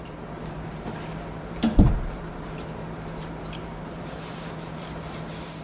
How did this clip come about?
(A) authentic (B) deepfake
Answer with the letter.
B